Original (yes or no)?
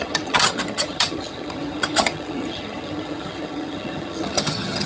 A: no